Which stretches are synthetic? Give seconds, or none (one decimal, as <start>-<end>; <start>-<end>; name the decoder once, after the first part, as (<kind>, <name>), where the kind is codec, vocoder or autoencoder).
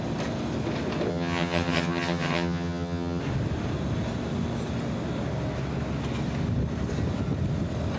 1.1-3.2 (vocoder, HiFi-GAN)